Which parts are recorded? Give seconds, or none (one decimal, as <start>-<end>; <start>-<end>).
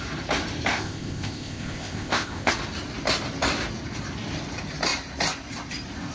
0.0-0.7; 2.5-6.1